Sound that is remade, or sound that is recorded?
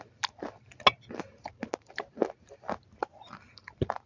recorded